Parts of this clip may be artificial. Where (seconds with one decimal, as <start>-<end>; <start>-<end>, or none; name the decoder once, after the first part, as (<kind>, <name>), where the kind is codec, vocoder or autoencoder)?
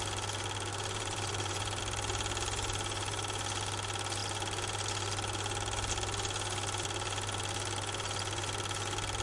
0.7-1.8 (vocoder, BigVGAN v2)